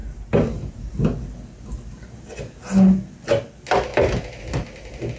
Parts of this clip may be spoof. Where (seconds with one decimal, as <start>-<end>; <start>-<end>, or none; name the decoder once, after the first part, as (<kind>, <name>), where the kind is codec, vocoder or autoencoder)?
0.0-1.0 (vocoder, BigVGAN v2); 3.9-4.4